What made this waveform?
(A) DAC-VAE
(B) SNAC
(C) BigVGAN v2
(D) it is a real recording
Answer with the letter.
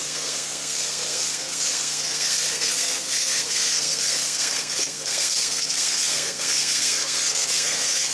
B